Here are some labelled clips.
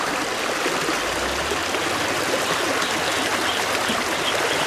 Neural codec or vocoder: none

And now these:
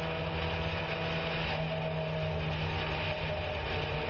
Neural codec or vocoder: none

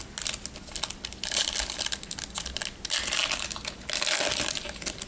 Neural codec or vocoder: none